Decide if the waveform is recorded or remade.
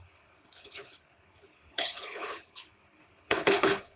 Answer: remade